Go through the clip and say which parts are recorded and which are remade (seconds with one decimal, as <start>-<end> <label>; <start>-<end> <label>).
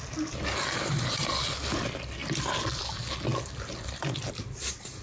0.0-5.0 recorded